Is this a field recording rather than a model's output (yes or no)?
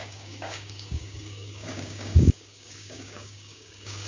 no